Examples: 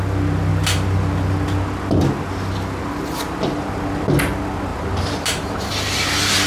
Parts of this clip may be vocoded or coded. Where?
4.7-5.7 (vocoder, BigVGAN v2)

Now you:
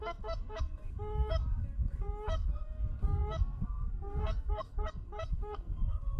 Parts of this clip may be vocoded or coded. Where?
0.0-6.2 (codec, SNAC)

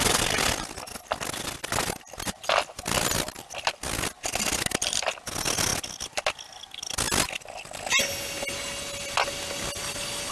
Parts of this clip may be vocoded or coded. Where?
none

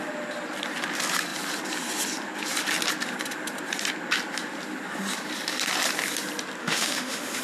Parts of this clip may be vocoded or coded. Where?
6.6-7.4 (autoencoder, DAC-VAE)